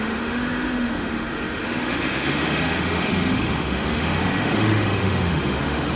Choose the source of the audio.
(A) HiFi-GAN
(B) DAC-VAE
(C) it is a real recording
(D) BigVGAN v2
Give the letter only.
B